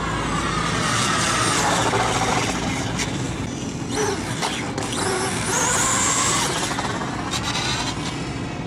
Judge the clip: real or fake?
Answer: real